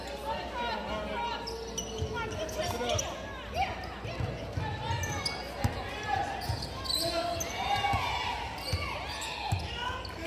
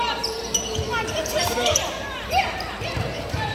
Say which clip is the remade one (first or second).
second